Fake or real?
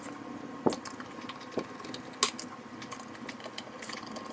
real